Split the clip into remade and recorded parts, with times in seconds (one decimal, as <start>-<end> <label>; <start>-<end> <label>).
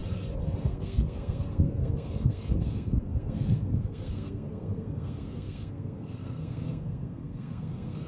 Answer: 0.0-0.6 recorded; 0.6-8.1 remade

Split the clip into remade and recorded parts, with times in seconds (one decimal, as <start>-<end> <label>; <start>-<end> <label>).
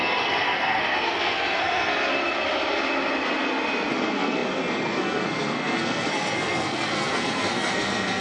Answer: 0.0-2.1 remade; 2.1-3.9 recorded; 3.9-8.2 remade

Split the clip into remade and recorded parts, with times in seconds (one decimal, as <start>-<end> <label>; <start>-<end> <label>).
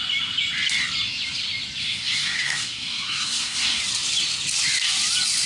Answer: 0.0-1.8 recorded; 1.8-3.8 remade; 3.8-5.5 recorded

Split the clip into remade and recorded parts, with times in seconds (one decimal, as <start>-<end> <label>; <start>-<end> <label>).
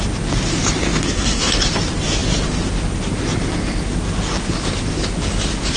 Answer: 0.0-1.0 recorded; 1.0-1.5 remade; 1.5-5.8 recorded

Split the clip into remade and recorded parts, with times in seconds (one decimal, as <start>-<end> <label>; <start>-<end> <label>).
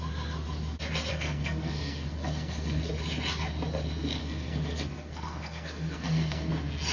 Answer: 0.0-1.1 recorded; 1.1-2.9 remade; 2.9-4.2 recorded; 4.2-6.5 remade; 6.5-6.9 recorded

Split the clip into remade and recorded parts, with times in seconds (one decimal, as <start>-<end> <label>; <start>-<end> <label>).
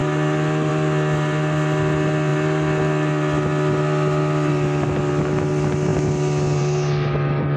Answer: 0.0-7.6 recorded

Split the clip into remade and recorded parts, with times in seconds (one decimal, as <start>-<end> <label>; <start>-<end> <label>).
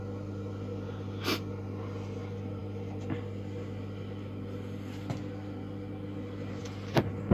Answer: 0.0-7.3 recorded